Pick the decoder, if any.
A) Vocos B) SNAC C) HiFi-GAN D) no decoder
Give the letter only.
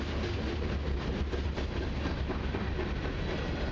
D